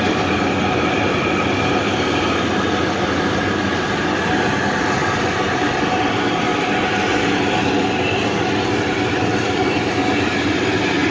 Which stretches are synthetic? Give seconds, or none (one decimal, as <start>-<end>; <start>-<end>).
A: none